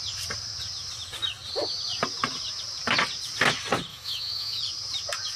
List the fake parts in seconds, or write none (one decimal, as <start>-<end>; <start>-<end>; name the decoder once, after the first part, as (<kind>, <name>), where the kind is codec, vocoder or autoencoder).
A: 3.9-4.6 (autoencoder, DAC-VAE)